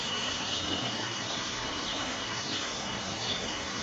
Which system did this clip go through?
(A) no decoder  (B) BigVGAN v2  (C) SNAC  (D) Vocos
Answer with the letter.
C